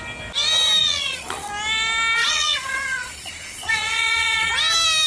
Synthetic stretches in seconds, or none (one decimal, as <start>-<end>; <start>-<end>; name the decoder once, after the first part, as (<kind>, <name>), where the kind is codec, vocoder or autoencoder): 0.8-1.5 (vocoder, Vocos); 2.2-4.5